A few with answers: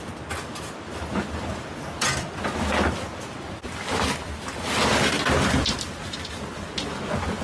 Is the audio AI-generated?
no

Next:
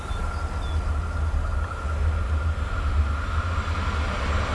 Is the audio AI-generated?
no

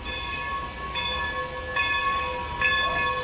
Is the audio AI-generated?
no